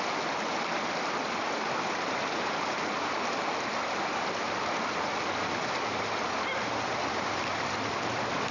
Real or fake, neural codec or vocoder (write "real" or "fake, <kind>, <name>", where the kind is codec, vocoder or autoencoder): fake, vocoder, BigVGAN v2